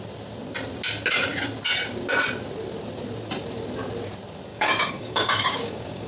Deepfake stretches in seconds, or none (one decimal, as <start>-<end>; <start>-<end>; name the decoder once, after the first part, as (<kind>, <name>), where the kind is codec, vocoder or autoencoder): 4.5-6.1 (codec, DAC)